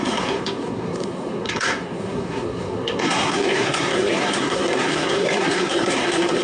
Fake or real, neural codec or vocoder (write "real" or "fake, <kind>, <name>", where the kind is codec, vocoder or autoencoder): fake, codec, SNAC